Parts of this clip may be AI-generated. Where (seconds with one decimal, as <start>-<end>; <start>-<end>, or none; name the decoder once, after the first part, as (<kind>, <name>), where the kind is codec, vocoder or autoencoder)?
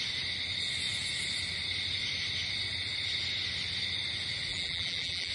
4.5-5.3 (vocoder, BigVGAN v2)